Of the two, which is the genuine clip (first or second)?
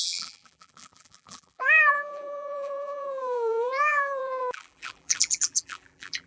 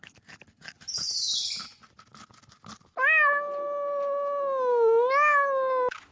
second